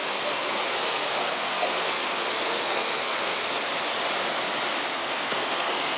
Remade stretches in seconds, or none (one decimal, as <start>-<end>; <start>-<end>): 0.0-3.6; 4.9-6.0